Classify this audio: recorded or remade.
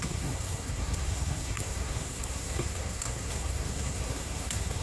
remade